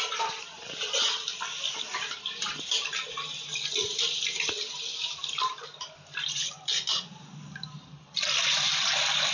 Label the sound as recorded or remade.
recorded